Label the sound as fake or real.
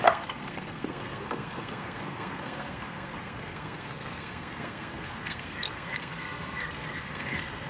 fake